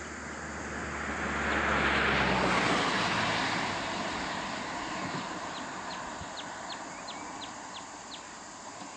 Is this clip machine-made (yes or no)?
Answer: no